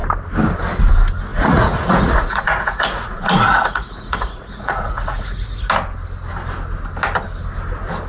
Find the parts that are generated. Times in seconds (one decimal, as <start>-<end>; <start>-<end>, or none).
1.3-5.7

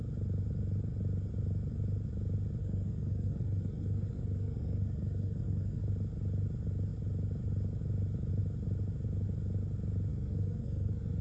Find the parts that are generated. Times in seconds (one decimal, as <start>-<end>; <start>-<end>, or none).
2.6-5.8; 10.1-11.2

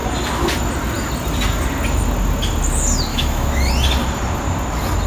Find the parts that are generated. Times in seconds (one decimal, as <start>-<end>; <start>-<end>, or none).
3.1-3.7

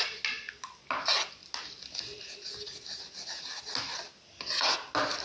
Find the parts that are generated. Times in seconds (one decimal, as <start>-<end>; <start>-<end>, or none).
none

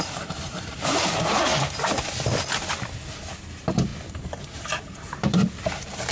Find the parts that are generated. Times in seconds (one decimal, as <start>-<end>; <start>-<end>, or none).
0.0-1.5; 3.3-6.1

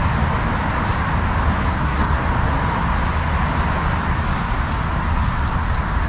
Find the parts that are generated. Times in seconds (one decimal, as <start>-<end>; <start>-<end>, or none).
1.7-2.2

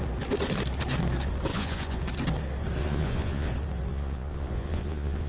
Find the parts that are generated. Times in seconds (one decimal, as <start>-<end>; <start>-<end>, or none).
1.5-2.0; 2.8-3.5; 3.9-5.3